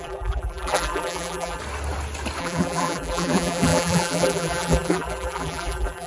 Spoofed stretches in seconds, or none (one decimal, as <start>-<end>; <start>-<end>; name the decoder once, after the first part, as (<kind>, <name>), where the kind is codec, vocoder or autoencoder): 0.0-1.6 (vocoder, BigVGAN v2); 2.4-6.1

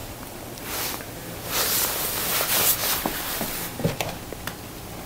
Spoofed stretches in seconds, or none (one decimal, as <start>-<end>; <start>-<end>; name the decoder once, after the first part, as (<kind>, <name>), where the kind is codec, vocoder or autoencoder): 0.0-2.3 (vocoder, BigVGAN v2); 2.8-3.9

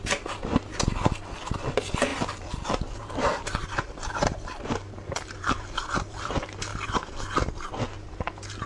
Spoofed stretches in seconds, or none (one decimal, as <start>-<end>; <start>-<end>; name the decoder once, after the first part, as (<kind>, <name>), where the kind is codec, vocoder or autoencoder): 2.1-6.3 (vocoder, BigVGAN v2)

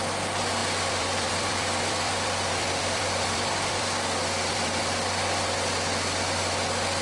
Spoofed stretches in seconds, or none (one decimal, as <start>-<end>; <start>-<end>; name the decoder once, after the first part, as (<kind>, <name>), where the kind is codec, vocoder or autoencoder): 0.6-4.8 (vocoder, BigVGAN v2)